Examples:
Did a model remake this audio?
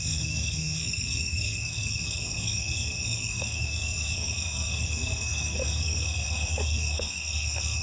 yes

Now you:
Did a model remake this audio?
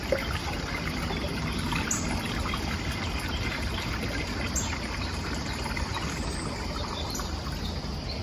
no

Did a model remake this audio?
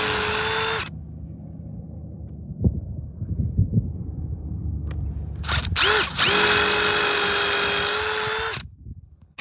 no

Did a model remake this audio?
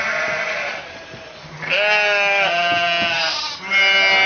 no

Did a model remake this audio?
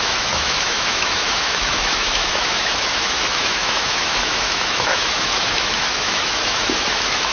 yes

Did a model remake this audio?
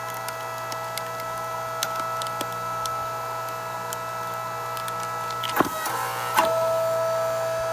no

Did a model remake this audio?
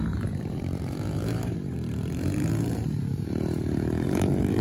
yes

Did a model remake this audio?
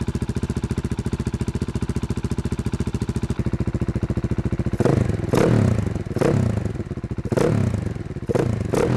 no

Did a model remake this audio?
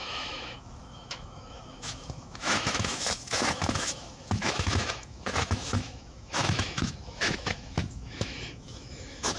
yes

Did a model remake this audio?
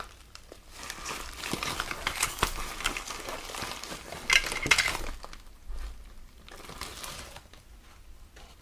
no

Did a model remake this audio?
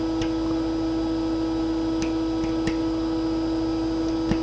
no